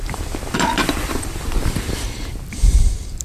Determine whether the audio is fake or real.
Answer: fake